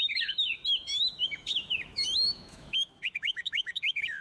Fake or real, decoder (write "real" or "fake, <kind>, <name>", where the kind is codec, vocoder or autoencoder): fake, autoencoder, DAC-VAE